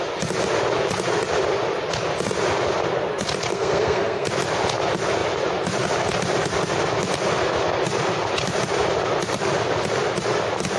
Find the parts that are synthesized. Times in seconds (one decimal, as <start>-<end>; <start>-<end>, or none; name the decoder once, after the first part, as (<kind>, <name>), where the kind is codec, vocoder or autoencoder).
3.5-4.3 (codec, SNAC)